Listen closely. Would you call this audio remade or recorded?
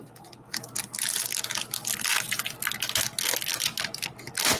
recorded